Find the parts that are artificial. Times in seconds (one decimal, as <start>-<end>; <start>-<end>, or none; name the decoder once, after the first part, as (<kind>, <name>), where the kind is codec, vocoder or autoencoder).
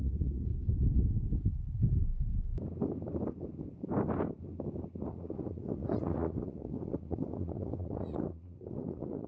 0.0-0.5 (vocoder, Vocos); 5.1-9.3